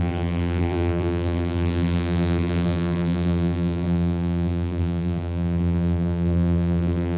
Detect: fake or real fake